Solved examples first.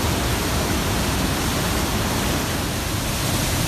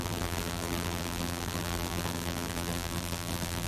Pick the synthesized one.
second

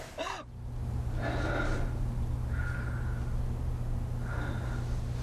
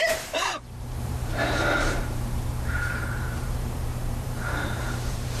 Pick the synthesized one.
second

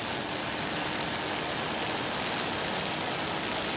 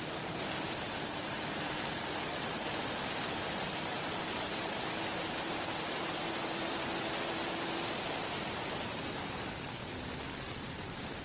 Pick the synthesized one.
second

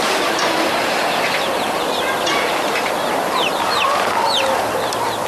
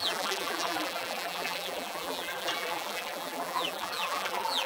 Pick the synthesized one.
second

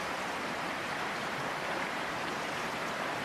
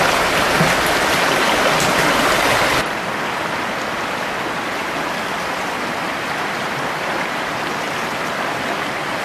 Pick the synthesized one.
first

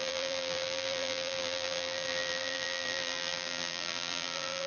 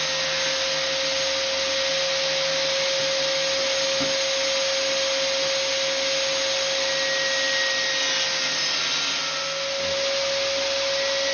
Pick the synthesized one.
first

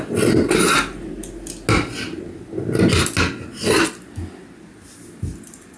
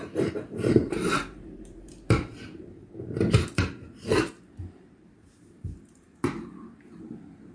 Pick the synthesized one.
second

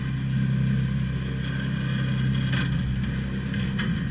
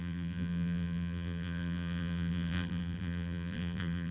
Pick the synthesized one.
second